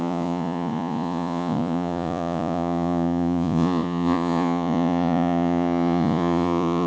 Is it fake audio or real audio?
fake